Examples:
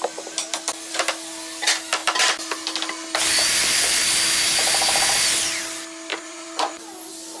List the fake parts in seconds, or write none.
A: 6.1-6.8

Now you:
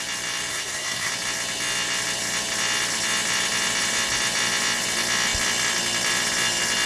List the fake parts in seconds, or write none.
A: 0.5-1.1

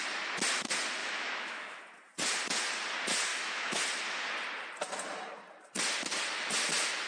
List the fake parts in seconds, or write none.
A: 1.0-1.8; 3.3-3.8

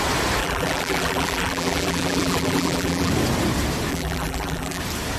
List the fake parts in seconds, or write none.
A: 0.4-3.1; 3.9-4.8

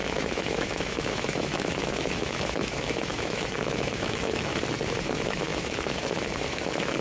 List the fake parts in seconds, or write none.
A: 0.0-4.5; 5.0-7.0

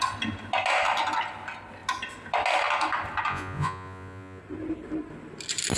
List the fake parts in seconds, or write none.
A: 3.3-4.4

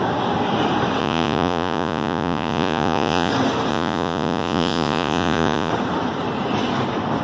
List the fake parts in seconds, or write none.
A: 1.0-3.3; 3.7-5.7

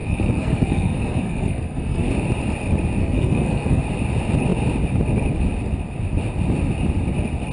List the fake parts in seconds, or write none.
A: 0.0-2.1; 3.0-3.8